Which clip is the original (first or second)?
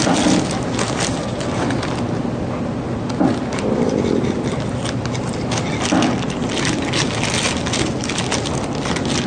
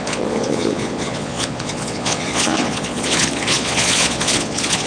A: first